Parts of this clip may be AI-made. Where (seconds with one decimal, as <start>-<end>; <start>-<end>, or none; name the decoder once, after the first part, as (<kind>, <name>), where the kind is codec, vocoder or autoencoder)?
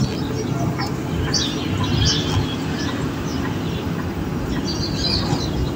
none